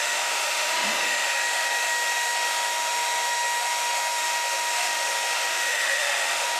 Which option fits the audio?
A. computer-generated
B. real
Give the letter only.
A